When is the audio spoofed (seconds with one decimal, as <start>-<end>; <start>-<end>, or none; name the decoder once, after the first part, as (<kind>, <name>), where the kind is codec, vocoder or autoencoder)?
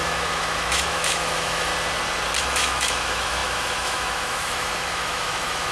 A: 0.0-1.7 (autoencoder, DAC-VAE); 2.4-5.7